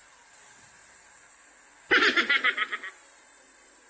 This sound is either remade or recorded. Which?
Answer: recorded